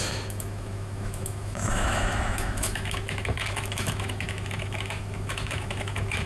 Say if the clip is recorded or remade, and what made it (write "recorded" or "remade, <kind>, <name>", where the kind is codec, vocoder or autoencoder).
remade, autoencoder, DAC-VAE